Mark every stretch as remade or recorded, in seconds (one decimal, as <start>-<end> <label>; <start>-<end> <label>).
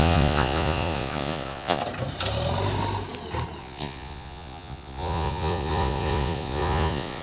0.0-1.8 remade; 1.8-3.6 recorded; 3.6-7.2 remade